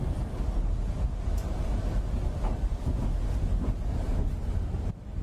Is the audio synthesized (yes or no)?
no